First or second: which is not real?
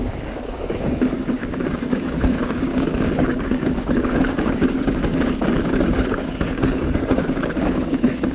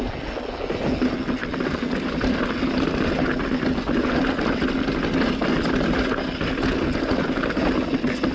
first